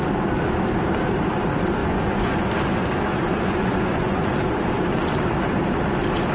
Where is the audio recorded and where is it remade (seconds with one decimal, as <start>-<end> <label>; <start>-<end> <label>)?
0.0-1.8 recorded; 1.8-2.5 remade; 2.5-3.1 recorded; 3.1-4.3 remade; 4.3-6.3 recorded